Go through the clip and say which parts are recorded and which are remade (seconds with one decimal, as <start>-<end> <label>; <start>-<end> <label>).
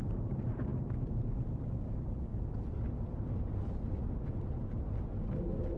0.0-2.3 remade; 2.3-5.8 recorded